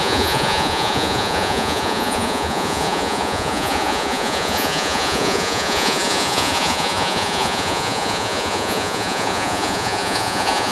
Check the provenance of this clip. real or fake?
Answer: fake